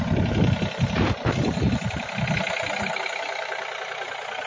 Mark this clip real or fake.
real